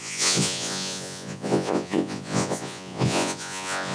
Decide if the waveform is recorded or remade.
remade